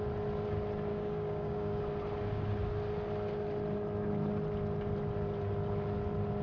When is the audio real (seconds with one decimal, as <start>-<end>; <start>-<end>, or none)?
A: 0.0-0.9; 1.8-6.4

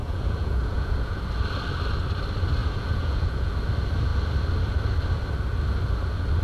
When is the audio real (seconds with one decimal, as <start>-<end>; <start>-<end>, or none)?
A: 1.2-2.6; 3.5-6.4

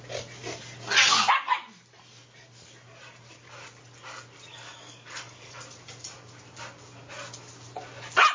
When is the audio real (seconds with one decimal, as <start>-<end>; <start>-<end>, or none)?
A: 0.0-4.5; 5.6-8.3

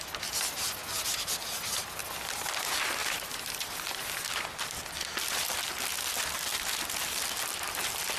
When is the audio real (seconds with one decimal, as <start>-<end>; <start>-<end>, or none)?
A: 0.0-8.2

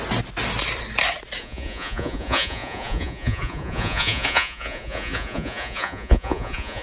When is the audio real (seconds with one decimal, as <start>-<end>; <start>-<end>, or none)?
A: 0.0-1.4

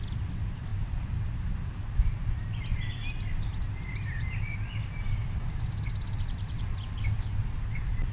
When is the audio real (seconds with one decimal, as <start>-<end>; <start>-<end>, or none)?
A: 0.0-8.1

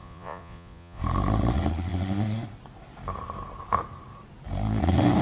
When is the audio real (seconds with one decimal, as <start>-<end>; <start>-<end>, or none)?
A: 1.0-5.2